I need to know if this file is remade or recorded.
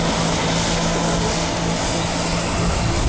recorded